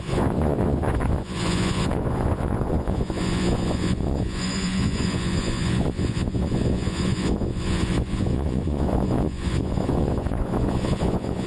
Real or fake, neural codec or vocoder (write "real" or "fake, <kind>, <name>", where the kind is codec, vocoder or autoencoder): fake, vocoder, Vocos